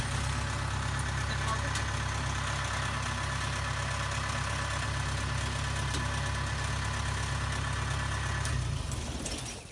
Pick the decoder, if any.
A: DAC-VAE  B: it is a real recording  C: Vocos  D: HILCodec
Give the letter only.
B